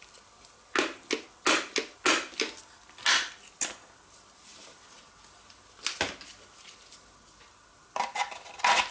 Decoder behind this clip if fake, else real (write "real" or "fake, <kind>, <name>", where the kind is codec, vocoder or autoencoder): real